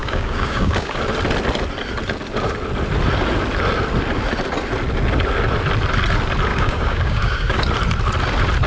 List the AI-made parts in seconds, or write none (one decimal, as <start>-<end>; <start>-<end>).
0.0-1.0; 6.5-7.6